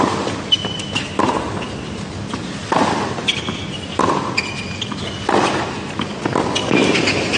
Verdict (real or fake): real